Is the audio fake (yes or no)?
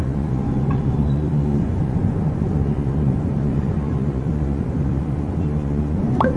yes